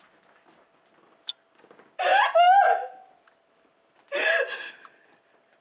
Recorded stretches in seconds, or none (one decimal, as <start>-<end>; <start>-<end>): 0.0-5.6